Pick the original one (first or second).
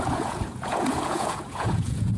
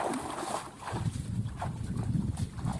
second